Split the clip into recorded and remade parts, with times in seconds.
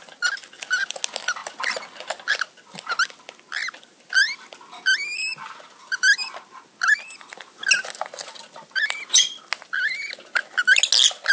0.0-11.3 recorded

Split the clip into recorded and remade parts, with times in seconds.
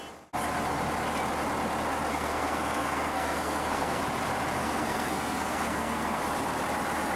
0.0-2.1 recorded; 2.1-4.0 remade; 4.0-4.6 recorded; 4.6-6.2 remade; 6.2-7.2 recorded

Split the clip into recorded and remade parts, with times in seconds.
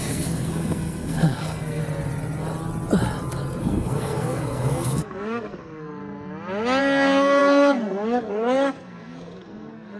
0.0-1.8 remade; 1.8-3.6 recorded; 3.6-6.0 remade; 6.0-6.8 recorded; 6.8-10.0 remade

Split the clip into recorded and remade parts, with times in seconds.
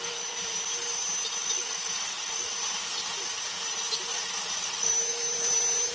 0.0-1.4 recorded; 1.4-2.5 remade; 2.5-4.1 recorded; 4.1-4.9 remade; 4.9-5.9 recorded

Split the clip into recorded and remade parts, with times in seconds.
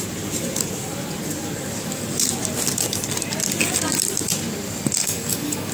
0.0-5.0 recorded; 5.0-5.7 remade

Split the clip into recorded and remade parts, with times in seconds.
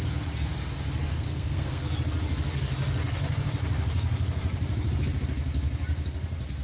0.0-1.1 recorded; 1.1-1.8 remade; 1.8-6.6 recorded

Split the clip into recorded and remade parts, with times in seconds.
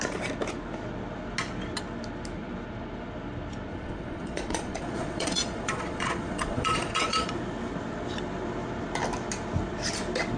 0.0-3.7 recorded; 3.7-7.3 remade; 7.3-10.4 recorded